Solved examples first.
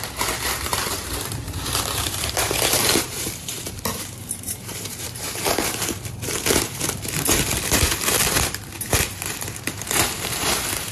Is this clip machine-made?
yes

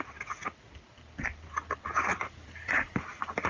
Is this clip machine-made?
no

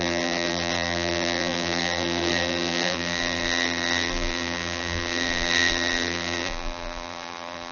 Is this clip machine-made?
yes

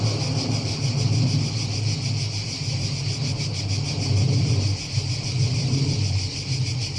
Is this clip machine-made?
no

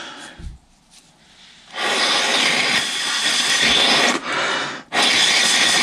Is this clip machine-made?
no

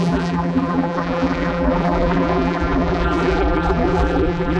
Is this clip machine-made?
yes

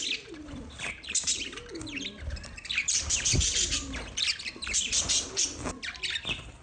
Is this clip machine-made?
yes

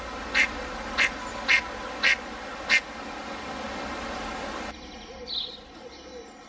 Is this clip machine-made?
no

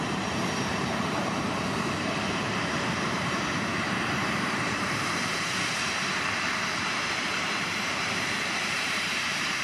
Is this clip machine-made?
yes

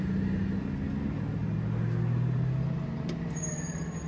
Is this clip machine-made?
no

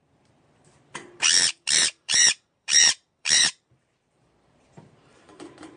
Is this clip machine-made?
yes